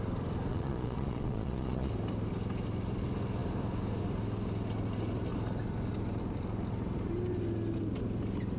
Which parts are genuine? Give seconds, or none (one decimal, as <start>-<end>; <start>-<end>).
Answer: 0.0-0.5; 1.9-8.6